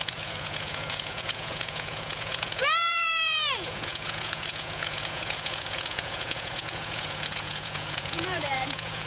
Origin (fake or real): fake